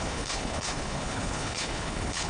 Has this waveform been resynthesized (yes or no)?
yes